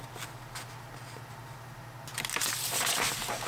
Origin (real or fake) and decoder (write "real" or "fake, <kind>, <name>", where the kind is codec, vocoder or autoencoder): real